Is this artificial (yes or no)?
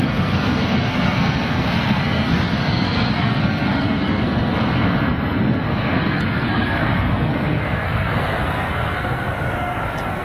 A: yes